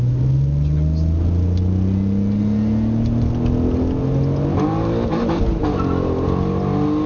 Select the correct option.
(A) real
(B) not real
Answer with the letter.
A